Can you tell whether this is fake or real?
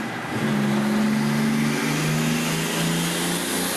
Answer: real